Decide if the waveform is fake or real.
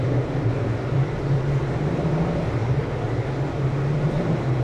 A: real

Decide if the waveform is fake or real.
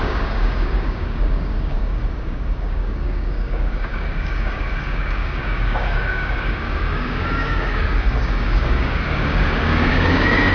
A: fake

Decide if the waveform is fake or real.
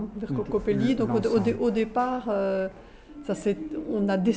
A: real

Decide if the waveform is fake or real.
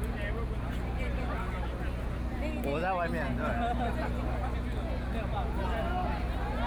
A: real